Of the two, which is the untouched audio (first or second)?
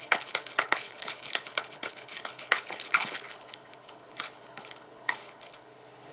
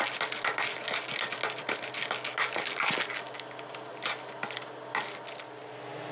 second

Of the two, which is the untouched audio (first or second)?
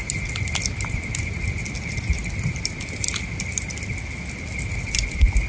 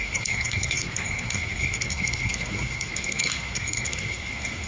first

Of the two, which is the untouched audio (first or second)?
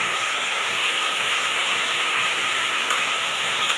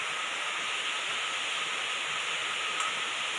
second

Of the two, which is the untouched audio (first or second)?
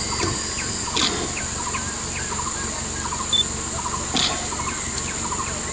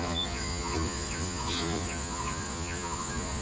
first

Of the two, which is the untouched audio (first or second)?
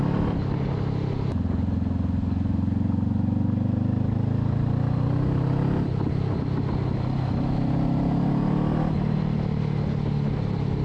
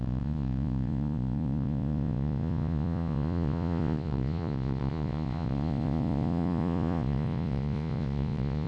first